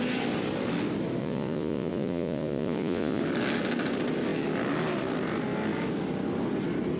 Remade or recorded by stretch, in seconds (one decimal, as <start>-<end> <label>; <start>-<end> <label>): 0.0-1.2 recorded; 1.2-3.2 remade; 3.2-7.0 recorded